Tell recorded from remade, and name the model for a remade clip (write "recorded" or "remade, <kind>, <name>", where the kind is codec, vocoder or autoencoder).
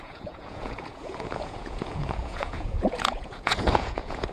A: remade, vocoder, Vocos